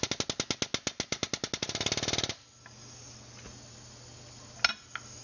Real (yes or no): yes